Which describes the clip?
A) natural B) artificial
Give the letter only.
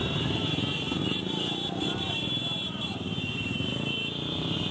B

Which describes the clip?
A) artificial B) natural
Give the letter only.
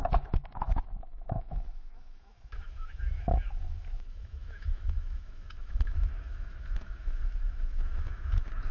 A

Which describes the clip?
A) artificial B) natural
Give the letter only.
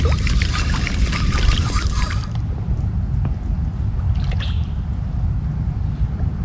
B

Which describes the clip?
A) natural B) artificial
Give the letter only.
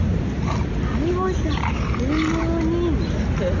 A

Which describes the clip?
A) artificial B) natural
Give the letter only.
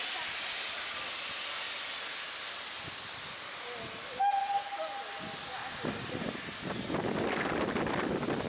B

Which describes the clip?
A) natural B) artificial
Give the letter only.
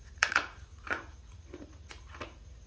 B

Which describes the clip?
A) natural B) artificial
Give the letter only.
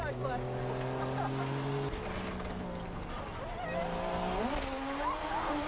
A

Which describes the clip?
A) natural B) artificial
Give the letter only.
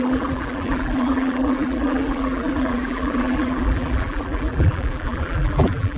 B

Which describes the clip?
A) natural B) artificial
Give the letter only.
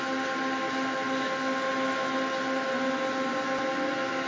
A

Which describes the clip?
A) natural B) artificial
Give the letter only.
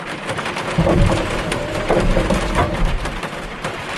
B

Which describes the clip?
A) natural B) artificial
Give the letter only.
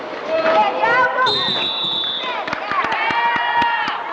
A